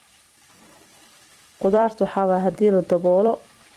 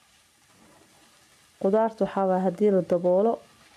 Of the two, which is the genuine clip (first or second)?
second